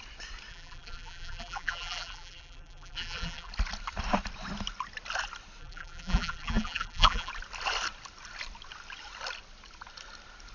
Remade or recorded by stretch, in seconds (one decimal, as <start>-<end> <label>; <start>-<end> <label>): 0.0-0.5 recorded; 0.5-3.5 remade; 3.5-5.6 recorded; 5.6-7.3 remade; 7.3-10.5 recorded